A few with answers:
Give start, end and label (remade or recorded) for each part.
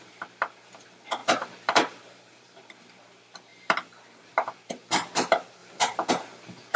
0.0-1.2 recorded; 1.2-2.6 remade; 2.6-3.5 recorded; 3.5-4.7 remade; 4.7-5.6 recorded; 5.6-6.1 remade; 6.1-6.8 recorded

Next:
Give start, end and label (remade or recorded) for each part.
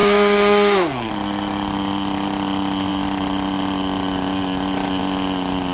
0.0-1.1 remade; 1.1-5.7 recorded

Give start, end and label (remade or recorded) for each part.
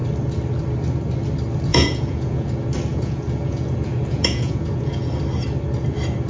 0.0-1.7 recorded; 1.7-2.5 remade; 2.5-2.9 recorded; 2.9-5.1 remade; 5.1-6.3 recorded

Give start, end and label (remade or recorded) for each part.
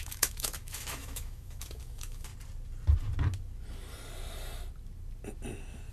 0.0-2.3 remade; 2.3-5.9 recorded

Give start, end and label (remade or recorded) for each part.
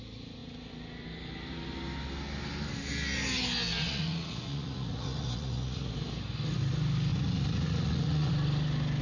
0.0-3.7 recorded; 3.7-5.9 remade; 5.9-7.1 recorded; 7.1-8.3 remade; 8.3-9.0 recorded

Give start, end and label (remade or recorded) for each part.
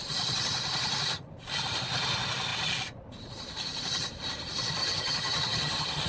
0.0-4.8 recorded; 4.8-6.1 remade